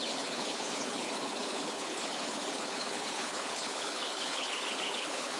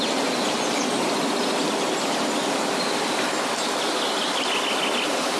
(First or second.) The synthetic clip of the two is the first